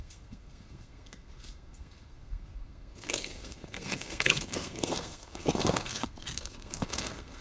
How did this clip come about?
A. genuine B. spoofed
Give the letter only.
B